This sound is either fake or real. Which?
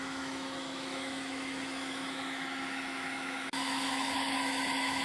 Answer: fake